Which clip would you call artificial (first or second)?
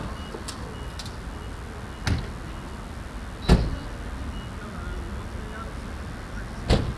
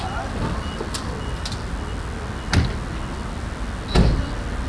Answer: second